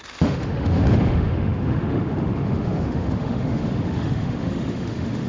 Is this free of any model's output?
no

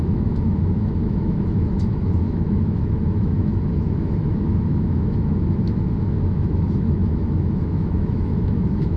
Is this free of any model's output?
no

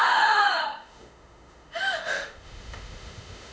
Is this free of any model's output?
no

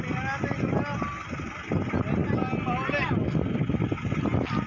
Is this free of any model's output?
yes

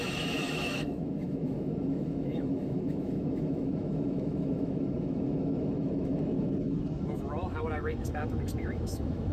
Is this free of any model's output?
no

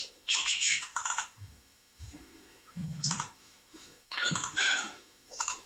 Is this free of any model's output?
no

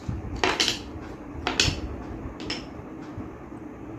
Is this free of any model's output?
yes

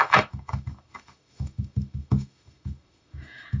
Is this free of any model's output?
no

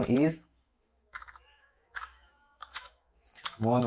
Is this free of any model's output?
no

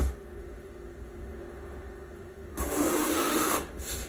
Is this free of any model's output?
no